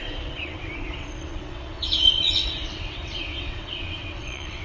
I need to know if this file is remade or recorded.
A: remade